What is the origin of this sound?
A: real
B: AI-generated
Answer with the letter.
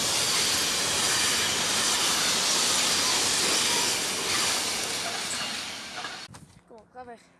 A